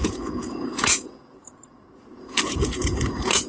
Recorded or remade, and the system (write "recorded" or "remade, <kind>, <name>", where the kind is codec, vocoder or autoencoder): remade, vocoder, Vocos